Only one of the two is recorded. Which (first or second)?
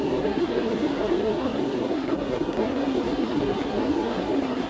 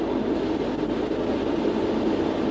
second